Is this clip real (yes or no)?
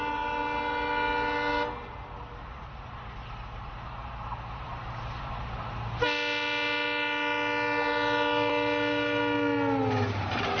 yes